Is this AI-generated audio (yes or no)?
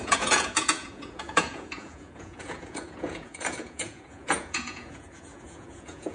yes